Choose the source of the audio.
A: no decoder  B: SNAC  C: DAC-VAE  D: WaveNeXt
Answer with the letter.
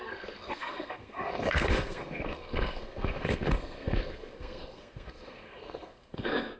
B